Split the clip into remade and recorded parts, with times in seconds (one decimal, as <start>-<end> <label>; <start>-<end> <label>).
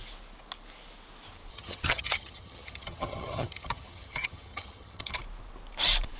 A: 0.0-1.5 recorded; 1.5-5.2 remade; 5.2-6.2 recorded